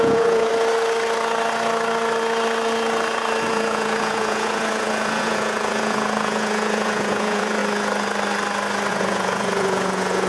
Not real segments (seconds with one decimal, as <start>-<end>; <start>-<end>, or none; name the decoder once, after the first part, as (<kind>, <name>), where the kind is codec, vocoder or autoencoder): 0.0-0.5 (vocoder, Vocos); 3.5-7.6; 8.9-10.3